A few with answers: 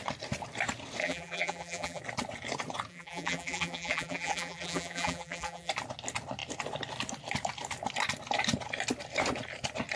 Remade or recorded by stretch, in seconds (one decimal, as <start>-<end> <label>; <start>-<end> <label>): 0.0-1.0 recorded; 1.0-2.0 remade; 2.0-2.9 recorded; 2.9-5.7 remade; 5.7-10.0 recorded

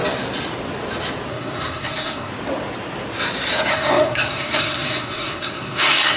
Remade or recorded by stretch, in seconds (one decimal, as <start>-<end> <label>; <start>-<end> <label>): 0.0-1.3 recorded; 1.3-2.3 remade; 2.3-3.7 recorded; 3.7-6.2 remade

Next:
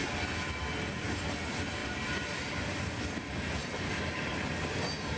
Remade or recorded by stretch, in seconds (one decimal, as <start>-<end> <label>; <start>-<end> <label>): 0.0-3.6 recorded; 3.6-4.5 remade; 4.5-5.2 recorded

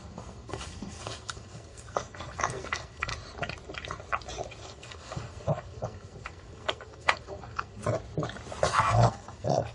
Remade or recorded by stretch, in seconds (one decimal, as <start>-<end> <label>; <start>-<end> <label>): 0.0-3.1 remade; 3.1-4.6 recorded; 4.6-7.8 remade; 7.8-8.7 recorded; 8.7-9.7 remade

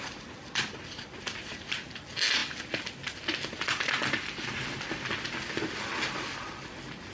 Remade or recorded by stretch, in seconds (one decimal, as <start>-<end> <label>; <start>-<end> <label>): 0.0-7.1 recorded

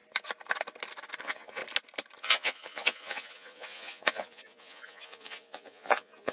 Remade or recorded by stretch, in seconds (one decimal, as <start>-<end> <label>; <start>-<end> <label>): 0.0-1.2 recorded; 1.2-1.6 remade; 1.6-2.2 recorded; 2.2-6.3 remade